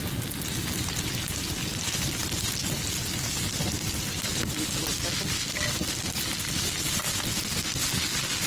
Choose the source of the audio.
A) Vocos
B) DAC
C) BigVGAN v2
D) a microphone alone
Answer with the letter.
D